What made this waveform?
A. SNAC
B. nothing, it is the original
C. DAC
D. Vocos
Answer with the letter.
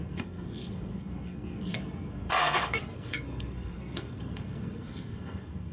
A